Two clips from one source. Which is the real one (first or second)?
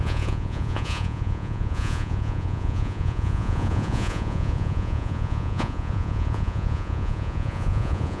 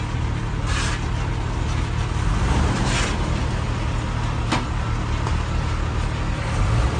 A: second